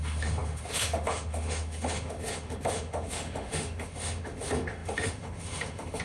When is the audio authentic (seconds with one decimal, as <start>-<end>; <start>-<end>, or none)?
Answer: none